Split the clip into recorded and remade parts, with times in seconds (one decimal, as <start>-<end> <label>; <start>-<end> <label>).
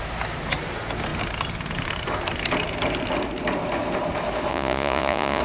0.0-4.5 recorded; 4.5-5.4 remade